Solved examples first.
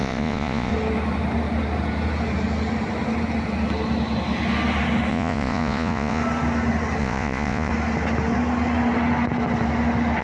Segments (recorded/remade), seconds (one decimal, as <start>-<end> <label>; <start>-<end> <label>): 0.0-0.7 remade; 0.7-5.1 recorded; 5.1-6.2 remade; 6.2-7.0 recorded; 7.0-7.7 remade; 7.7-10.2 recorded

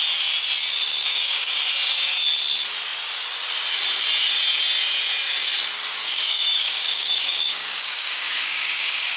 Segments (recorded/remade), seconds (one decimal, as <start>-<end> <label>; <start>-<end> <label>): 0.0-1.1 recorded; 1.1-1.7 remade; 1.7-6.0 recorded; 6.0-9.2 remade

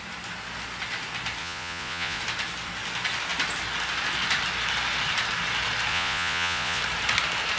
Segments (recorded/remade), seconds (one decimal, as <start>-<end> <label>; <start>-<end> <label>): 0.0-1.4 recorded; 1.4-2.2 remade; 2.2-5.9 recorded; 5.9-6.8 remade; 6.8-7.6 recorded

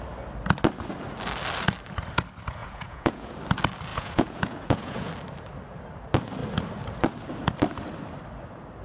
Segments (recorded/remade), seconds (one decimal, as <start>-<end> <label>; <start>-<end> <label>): 0.0-2.6 recorded; 2.6-3.3 remade; 3.3-3.9 recorded; 3.9-5.1 remade; 5.1-8.8 recorded

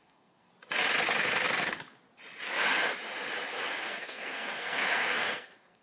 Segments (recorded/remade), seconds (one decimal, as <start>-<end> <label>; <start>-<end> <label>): 0.0-0.5 remade; 0.5-3.8 recorded; 3.8-5.8 remade

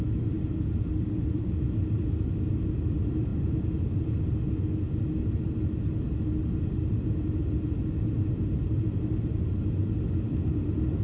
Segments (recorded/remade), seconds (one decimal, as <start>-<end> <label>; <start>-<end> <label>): 0.0-3.3 remade; 3.3-8.5 recorded; 8.5-11.0 remade

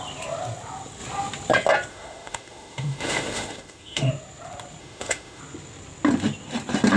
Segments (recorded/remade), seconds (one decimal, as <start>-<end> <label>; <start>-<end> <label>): 0.0-1.9 recorded; 1.9-4.1 remade; 4.1-4.8 recorded; 4.8-5.4 remade; 5.4-7.0 recorded